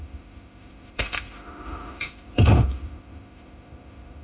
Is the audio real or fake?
fake